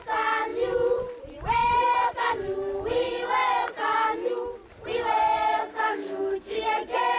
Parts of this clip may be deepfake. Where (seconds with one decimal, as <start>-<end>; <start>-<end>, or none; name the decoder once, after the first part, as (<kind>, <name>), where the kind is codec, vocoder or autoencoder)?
5.7-6.7 (codec, SNAC)